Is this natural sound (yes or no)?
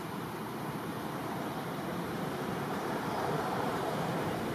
no